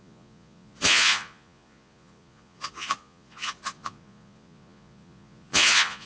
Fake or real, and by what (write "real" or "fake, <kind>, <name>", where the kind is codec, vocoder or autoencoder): fake, vocoder, Vocos